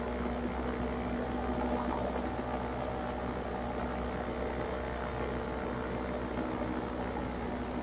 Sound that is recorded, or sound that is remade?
recorded